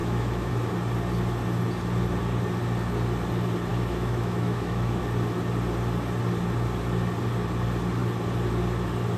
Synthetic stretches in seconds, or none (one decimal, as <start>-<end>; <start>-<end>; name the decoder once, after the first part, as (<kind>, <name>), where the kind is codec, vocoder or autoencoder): 0.0-0.5 (autoencoder, DAC-VAE); 3.7-5.0